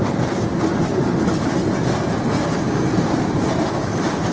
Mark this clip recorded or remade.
recorded